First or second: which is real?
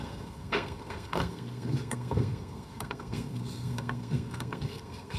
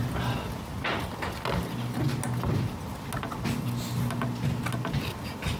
second